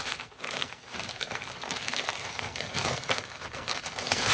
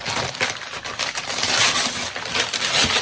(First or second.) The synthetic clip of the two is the first